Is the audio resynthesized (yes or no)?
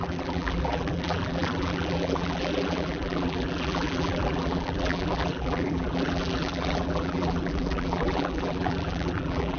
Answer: yes